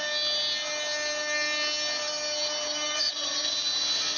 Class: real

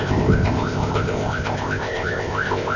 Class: fake